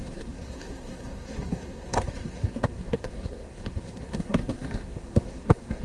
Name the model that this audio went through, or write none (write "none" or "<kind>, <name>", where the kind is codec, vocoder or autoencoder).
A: codec, SNAC